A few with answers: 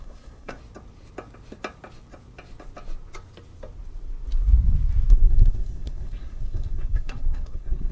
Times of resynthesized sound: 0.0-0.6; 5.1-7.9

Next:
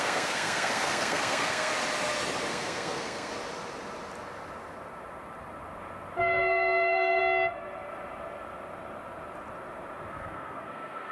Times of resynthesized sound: 0.0-1.7; 2.5-3.3; 6.2-7.2; 10.1-11.1

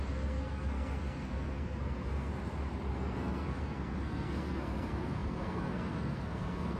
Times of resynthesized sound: 0.0-2.3; 2.9-6.8

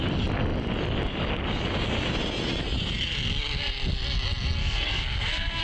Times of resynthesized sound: 4.6-5.6

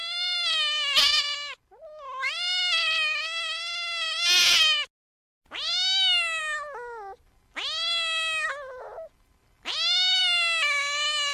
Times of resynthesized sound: none

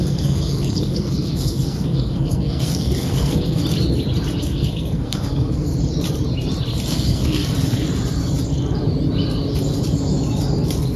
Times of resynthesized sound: 0.0-3.6; 4.4-5.7; 6.9-7.4

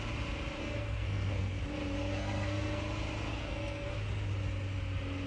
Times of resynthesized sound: 0.6-1.6; 2.0-2.8; 3.3-3.9

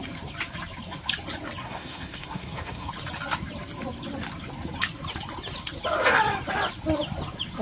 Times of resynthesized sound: 1.6-2.9